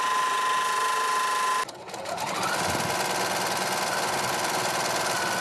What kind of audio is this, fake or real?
real